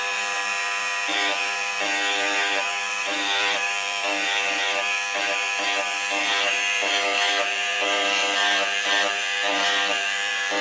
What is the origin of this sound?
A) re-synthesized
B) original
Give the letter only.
A